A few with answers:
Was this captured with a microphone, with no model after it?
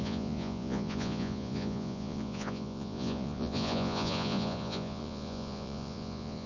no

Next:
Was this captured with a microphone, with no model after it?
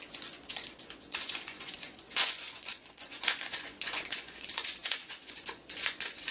no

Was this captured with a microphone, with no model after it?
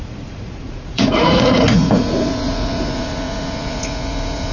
no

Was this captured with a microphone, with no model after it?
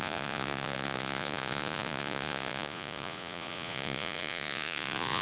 no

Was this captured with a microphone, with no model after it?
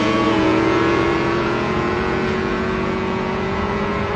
no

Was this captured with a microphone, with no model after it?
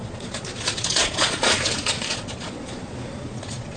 no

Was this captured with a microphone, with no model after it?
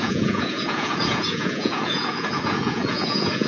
no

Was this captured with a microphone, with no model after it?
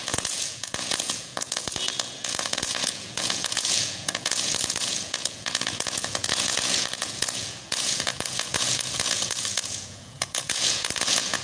no